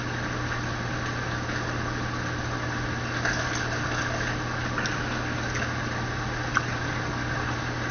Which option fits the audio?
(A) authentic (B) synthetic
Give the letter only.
A